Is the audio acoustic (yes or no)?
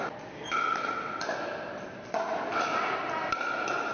yes